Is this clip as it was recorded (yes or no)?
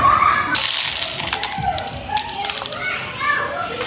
yes